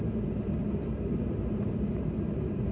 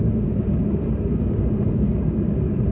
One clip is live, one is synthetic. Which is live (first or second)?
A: first